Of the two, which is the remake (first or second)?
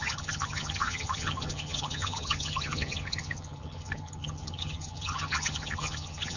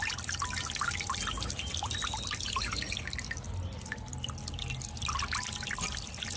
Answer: first